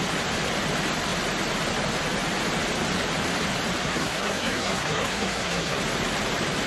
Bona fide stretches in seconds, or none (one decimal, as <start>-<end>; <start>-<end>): 0.0-3.8; 5.8-6.7